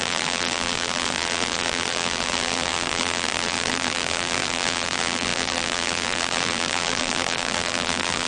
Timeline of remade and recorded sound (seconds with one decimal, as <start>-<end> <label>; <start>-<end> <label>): 0.0-8.3 remade